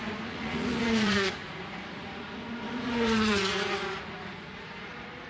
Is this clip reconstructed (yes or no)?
yes